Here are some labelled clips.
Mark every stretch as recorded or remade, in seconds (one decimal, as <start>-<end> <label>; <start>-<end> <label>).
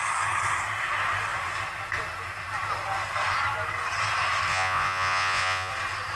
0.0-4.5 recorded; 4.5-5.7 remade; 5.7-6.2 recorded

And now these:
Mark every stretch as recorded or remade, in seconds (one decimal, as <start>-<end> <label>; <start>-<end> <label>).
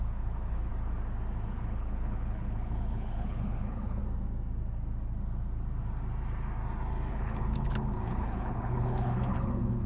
0.0-0.7 remade; 0.7-1.5 recorded; 1.5-4.0 remade; 4.0-7.1 recorded; 7.1-9.9 remade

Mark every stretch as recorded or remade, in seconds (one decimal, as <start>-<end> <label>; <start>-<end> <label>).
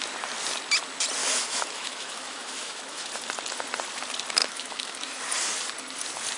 0.0-1.2 recorded; 1.2-3.1 remade; 3.1-4.4 recorded; 4.4-5.2 remade; 5.2-6.4 recorded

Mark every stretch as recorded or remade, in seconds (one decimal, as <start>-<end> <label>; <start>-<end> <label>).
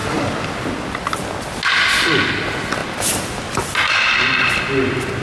0.0-1.2 remade; 1.2-2.8 recorded; 2.8-4.6 remade; 4.6-5.2 recorded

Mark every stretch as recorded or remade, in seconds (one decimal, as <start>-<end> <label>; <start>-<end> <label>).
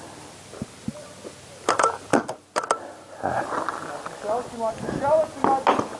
0.0-6.0 recorded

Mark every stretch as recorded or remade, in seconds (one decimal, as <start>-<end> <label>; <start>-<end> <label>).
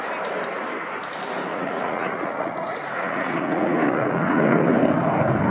0.0-1.5 recorded; 1.5-4.8 remade; 4.8-5.5 recorded